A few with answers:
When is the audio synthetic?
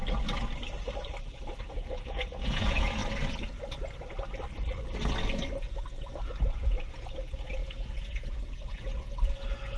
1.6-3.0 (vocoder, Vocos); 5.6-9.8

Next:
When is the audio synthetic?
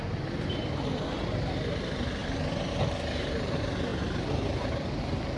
2.2-2.7 (vocoder, BigVGAN v2)